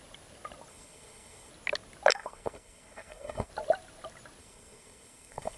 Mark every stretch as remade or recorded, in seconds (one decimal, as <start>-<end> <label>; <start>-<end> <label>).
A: 0.0-0.7 recorded; 0.7-1.5 remade; 1.5-2.1 recorded; 2.1-3.5 remade; 3.5-4.4 recorded; 4.4-5.6 remade